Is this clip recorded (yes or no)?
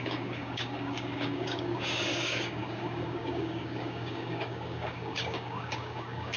no